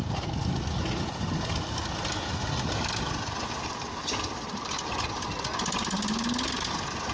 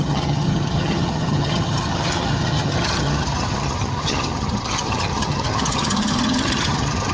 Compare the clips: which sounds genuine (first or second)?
first